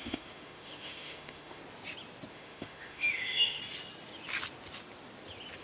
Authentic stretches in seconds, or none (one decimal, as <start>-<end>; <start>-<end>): 1.6-2.3; 3.6-5.6